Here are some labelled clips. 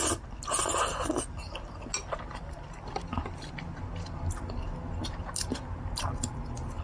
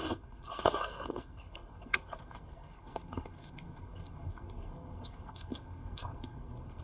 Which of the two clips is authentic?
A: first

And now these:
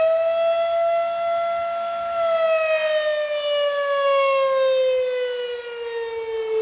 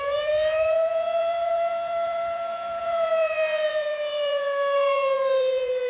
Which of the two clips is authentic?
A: first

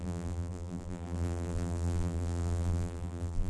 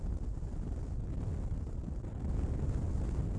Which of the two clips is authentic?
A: second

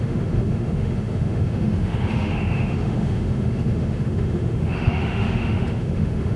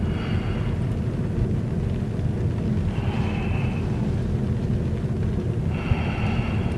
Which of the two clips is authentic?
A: second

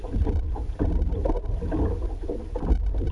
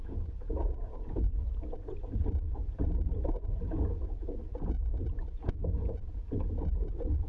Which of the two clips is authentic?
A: first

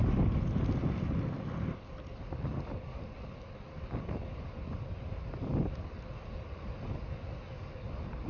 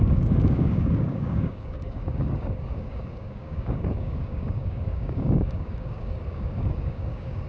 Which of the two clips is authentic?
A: first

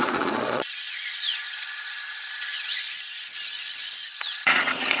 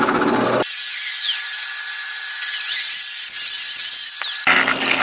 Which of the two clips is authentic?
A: second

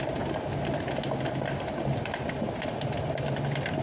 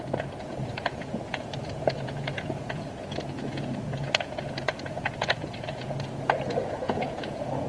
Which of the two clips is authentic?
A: first